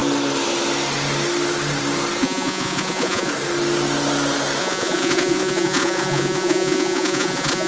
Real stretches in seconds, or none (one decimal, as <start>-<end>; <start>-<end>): 0.0-2.2; 3.3-4.6